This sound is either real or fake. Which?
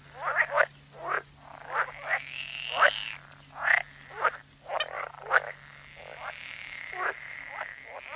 real